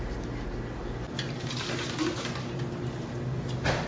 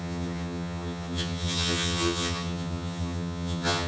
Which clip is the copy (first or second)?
second